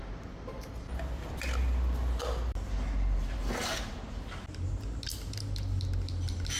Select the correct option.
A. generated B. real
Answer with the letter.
B